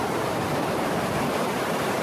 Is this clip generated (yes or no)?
yes